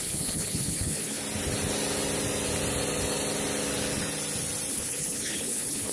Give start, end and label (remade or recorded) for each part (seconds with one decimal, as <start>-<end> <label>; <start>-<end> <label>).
0.0-1.2 remade; 1.2-4.7 recorded; 4.7-5.9 remade